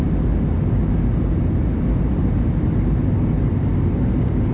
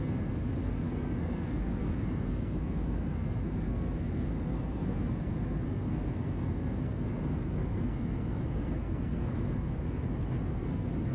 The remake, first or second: second